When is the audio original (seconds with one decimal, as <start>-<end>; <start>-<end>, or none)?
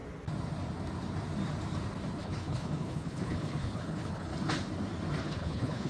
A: 0.0-2.2; 4.3-5.2